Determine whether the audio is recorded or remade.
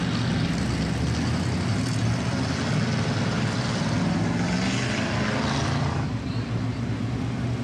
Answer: recorded